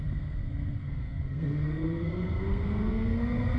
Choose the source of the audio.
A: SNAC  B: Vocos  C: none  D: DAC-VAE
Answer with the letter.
A